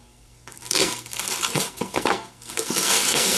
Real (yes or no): no